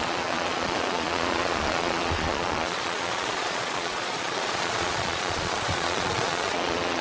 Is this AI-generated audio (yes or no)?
yes